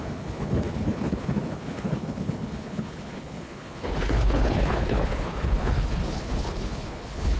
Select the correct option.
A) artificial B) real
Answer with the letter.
A